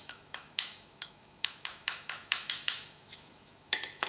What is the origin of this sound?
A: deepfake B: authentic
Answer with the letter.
A